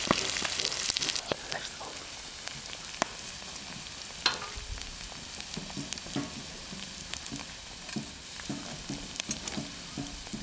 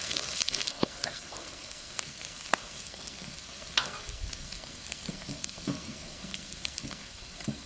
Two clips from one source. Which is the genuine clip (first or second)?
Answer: first